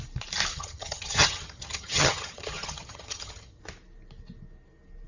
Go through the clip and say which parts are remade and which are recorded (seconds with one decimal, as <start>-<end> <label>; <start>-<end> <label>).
0.0-0.5 recorded; 0.5-3.6 remade; 3.6-5.1 recorded